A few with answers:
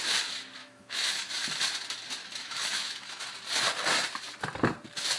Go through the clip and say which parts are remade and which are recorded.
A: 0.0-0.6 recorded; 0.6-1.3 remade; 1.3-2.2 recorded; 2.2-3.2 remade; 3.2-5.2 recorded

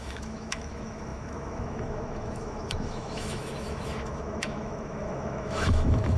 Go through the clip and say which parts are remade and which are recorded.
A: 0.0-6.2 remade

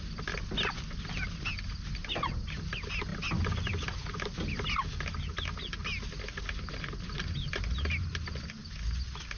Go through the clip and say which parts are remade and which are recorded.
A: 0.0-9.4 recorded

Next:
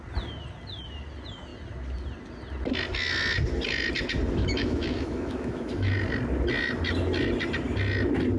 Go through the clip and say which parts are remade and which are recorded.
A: 0.0-4.4 recorded; 4.4-5.9 remade; 5.9-8.4 recorded

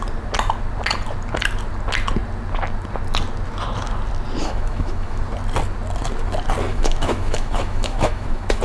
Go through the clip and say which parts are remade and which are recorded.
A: 0.0-4.4 recorded; 4.4-5.2 remade; 5.2-6.7 recorded; 6.7-8.6 remade

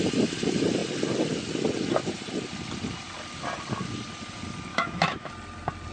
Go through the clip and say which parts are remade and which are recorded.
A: 0.0-4.7 recorded; 4.7-5.3 remade; 5.3-5.9 recorded